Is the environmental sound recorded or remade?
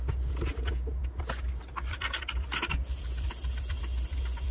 recorded